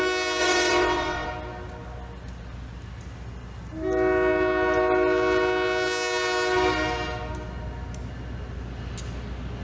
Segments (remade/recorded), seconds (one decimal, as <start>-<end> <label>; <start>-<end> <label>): 0.0-0.4 recorded; 0.4-1.3 remade; 1.3-9.6 recorded